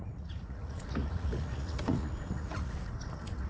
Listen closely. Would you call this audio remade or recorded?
remade